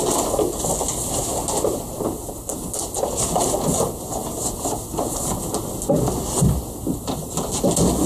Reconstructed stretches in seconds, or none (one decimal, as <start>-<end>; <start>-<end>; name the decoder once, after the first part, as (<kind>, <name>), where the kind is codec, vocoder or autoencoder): none